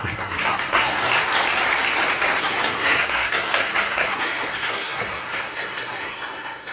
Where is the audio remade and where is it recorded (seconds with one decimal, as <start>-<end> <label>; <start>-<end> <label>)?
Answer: 0.0-1.1 remade; 1.1-2.4 recorded; 2.4-6.7 remade

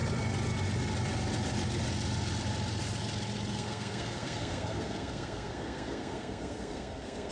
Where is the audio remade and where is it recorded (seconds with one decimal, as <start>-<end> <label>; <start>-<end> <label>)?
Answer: 0.0-3.5 recorded; 3.5-7.3 remade

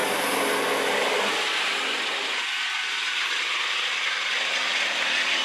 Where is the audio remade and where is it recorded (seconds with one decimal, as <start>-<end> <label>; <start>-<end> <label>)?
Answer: 0.0-5.4 recorded

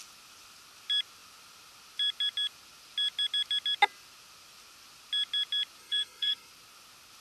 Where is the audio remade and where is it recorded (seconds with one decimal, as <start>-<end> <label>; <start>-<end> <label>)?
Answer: 0.0-5.8 recorded; 5.8-6.5 remade; 6.5-7.2 recorded

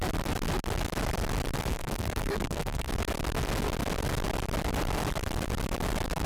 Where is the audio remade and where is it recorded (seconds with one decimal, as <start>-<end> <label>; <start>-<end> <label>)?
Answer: 0.0-1.7 recorded; 1.7-2.9 remade; 2.9-6.3 recorded

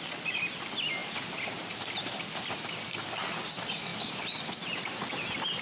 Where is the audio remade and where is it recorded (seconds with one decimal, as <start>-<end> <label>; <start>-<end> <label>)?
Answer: 0.0-5.6 recorded